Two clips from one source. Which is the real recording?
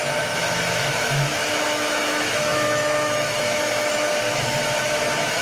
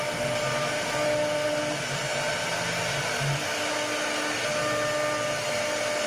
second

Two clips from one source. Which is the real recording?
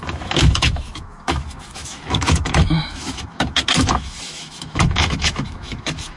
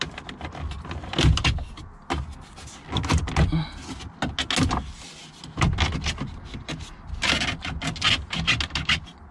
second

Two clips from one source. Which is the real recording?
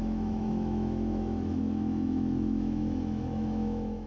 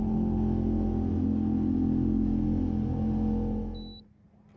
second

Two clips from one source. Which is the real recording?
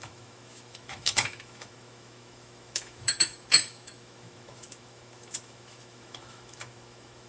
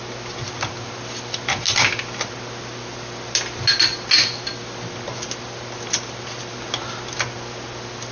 second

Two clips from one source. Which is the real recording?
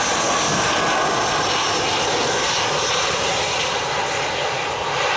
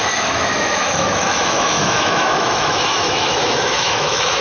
first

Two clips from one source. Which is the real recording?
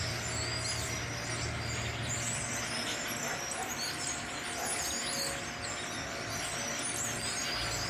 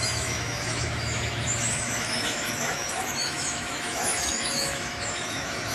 first